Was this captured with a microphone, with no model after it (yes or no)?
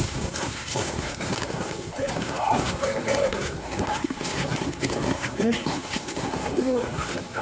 no